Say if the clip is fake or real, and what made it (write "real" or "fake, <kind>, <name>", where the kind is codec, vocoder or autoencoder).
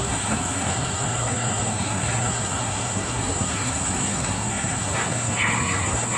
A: fake, codec, SNAC